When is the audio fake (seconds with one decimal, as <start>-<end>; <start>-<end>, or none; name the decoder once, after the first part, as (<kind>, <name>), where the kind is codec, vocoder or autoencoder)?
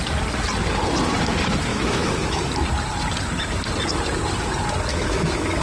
1.7-2.4 (autoencoder, DAC-VAE); 4.9-5.6